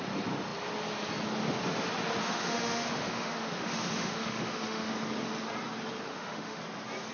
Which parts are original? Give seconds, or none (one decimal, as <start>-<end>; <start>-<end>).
0.0-2.2; 4.9-6.1; 6.6-7.1